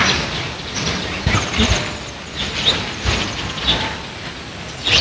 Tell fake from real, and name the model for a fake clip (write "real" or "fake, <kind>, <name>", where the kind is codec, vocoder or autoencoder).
real